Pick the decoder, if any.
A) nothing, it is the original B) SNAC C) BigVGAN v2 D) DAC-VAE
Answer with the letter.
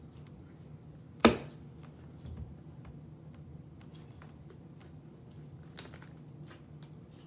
A